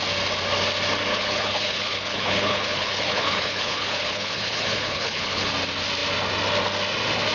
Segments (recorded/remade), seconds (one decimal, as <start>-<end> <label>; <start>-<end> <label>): 0.0-1.1 recorded; 1.1-5.5 remade; 5.5-7.3 recorded